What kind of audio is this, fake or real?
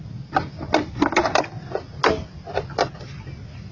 real